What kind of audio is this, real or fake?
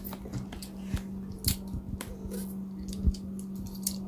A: real